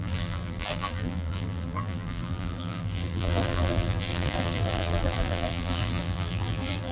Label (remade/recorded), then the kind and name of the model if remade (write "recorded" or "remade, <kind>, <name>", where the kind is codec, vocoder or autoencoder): remade, vocoder, BigVGAN v2